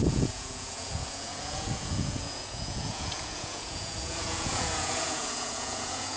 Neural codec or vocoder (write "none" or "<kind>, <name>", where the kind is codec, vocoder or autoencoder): vocoder, Vocos